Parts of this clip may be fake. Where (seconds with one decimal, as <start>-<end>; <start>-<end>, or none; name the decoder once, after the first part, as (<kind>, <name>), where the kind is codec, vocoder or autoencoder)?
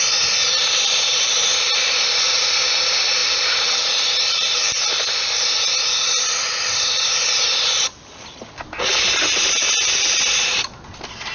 none